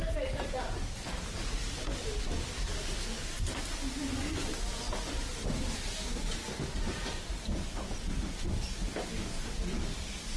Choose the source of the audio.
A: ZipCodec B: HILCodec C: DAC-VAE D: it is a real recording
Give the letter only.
D